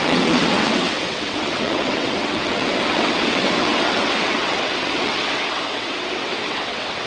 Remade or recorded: remade